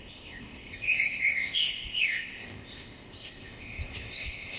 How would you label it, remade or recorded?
remade